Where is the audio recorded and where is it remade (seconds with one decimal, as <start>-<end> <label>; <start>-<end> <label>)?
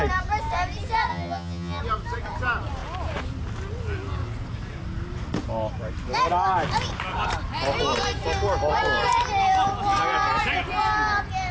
0.0-1.1 recorded; 1.1-1.8 remade; 1.8-11.5 recorded